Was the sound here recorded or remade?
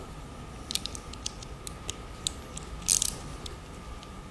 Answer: recorded